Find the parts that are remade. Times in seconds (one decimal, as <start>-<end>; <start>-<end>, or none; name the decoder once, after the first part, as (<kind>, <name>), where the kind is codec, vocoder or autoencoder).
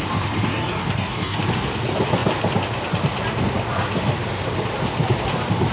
0.5-1.4 (codec, DAC)